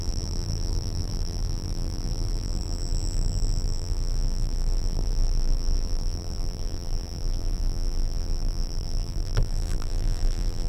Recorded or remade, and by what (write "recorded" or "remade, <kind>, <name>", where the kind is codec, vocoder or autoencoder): remade, vocoder, BigVGAN v2